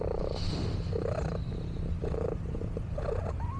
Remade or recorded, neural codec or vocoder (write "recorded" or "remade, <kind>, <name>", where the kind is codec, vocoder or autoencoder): recorded